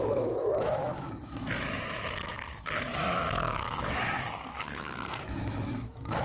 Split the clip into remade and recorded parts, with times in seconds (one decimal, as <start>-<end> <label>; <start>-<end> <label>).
0.0-6.2 remade